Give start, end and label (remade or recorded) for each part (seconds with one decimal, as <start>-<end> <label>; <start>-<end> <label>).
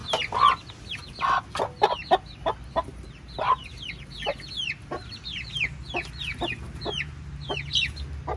0.0-8.4 recorded